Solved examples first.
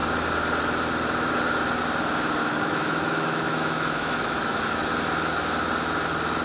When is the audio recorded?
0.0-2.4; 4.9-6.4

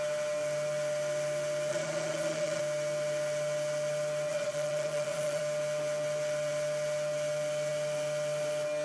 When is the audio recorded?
0.0-1.7; 2.6-4.3; 5.4-8.8

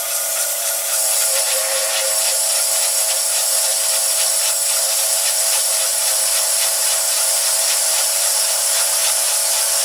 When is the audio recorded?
1.8-4.8; 6.8-7.6; 9.0-9.8